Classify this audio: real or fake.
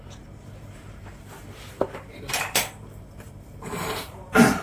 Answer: fake